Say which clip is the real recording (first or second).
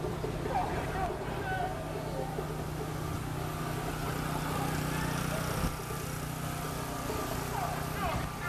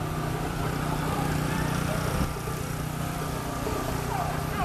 first